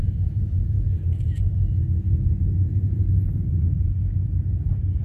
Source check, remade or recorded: remade